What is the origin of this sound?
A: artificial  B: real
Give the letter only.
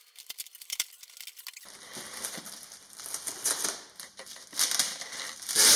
B